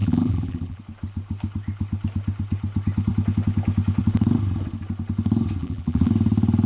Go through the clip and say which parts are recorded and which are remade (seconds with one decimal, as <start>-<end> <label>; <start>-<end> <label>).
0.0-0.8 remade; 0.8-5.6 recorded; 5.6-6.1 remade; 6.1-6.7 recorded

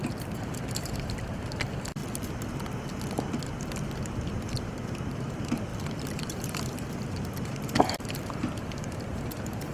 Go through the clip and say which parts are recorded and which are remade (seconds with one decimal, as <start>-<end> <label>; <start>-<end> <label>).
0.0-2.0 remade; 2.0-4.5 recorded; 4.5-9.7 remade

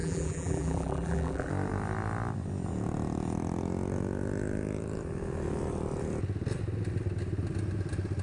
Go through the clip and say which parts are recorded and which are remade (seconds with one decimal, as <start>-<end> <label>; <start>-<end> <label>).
0.0-1.5 remade; 1.5-8.2 recorded

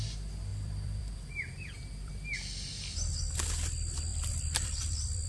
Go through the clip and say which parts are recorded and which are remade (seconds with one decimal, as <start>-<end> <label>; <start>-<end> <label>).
0.0-0.5 recorded; 0.5-2.1 remade; 2.1-4.1 recorded; 4.1-5.3 remade

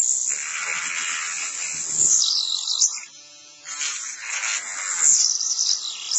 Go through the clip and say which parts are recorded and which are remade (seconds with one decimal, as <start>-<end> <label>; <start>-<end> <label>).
0.0-0.7 recorded; 0.7-4.4 remade; 4.4-5.1 recorded; 5.1-5.8 remade; 5.8-6.2 recorded

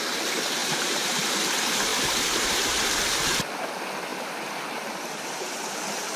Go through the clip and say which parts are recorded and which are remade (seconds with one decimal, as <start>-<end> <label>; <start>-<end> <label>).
0.0-0.6 recorded; 0.6-1.3 remade; 1.3-1.9 recorded; 1.9-2.9 remade; 2.9-4.1 recorded; 4.1-5.5 remade; 5.5-6.2 recorded

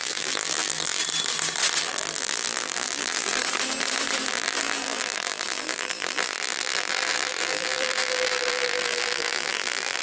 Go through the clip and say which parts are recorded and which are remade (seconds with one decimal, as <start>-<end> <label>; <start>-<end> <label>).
0.0-1.0 remade; 1.0-1.8 recorded; 1.8-3.4 remade; 3.4-4.3 recorded; 4.3-10.0 remade